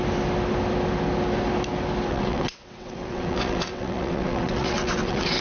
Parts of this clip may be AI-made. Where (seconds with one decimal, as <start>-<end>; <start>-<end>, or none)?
2.1-5.4

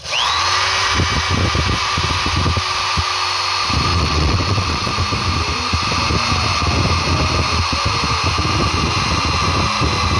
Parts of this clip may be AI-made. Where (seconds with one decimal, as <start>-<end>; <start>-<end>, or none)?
3.9-4.9

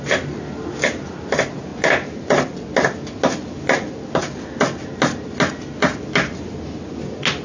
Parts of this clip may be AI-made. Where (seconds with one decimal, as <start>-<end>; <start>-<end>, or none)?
none

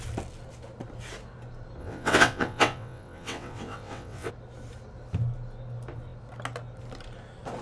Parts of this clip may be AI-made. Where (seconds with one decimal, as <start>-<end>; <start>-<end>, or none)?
1.8-4.3